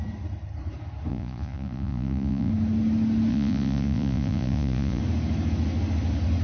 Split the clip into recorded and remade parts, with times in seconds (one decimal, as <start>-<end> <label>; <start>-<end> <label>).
0.0-1.1 recorded; 1.1-2.5 remade; 2.5-3.3 recorded; 3.3-5.0 remade; 5.0-6.4 recorded

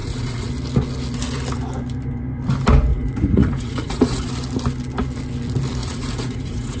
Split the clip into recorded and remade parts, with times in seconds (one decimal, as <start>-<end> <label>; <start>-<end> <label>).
0.0-0.5 remade; 0.5-2.9 recorded; 2.9-4.3 remade; 4.3-5.8 recorded; 5.8-6.8 remade

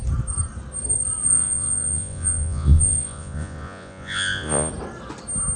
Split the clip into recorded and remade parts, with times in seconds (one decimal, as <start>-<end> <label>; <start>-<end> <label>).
0.0-1.3 recorded; 1.3-4.7 remade; 4.7-5.6 recorded

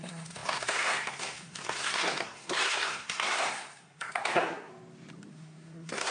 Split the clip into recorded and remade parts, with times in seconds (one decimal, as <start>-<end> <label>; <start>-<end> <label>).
0.0-4.7 remade; 4.7-5.3 recorded; 5.3-6.1 remade

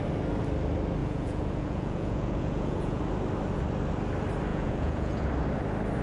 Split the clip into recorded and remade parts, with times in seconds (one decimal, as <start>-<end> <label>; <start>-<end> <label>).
0.0-1.0 recorded; 1.0-3.0 remade; 3.0-4.5 recorded; 4.5-5.3 remade; 5.3-6.0 recorded

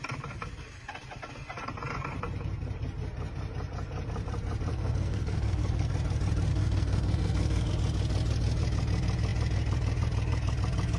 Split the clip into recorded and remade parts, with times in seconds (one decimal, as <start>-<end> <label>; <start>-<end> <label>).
0.0-4.7 recorded; 4.7-5.9 remade; 5.9-6.5 recorded; 6.5-7.7 remade; 7.7-11.0 recorded

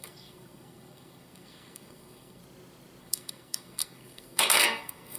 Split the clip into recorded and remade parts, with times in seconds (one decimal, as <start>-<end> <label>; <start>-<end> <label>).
0.0-2.4 remade; 2.4-3.0 recorded; 3.0-5.2 remade